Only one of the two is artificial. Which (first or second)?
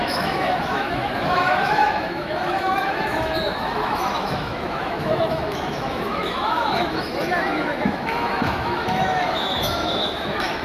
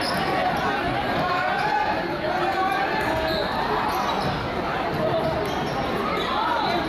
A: first